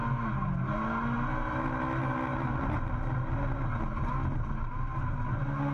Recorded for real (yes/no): yes